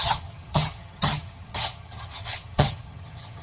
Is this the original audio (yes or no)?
no